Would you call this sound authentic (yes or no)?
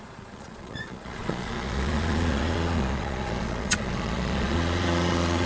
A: no